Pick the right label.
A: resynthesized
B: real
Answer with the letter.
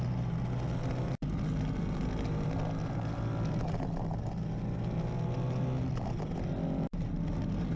B